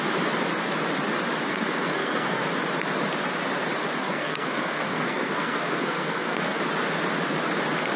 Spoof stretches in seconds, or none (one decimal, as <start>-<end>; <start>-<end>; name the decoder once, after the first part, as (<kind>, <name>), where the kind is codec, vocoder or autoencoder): 1.5-2.4 (codec, SNAC); 4.0-6.6